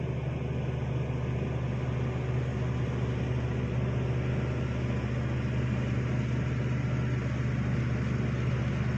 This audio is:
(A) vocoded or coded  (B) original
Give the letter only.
B